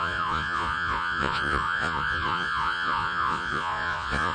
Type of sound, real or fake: fake